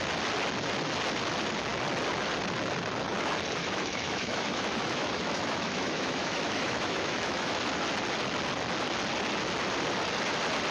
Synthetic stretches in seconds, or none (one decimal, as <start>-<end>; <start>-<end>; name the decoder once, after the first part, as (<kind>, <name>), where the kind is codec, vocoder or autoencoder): 3.6-7.6 (autoencoder, DAC-VAE)